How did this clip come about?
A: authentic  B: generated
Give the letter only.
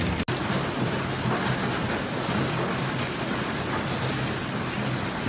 A